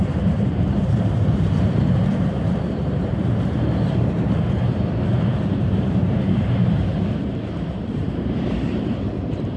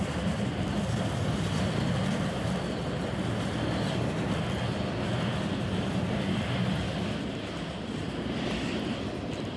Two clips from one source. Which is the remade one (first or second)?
first